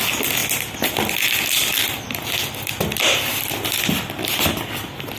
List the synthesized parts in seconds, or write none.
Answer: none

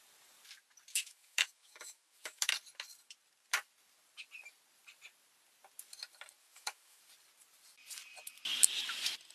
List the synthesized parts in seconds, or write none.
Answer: 0.9-2.5 (autoencoder, DAC-VAE); 6.4-7.0